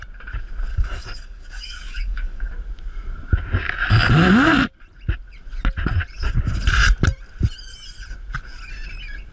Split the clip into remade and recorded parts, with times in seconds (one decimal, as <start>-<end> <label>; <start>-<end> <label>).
0.0-0.7 recorded; 0.7-2.5 remade; 2.5-9.3 recorded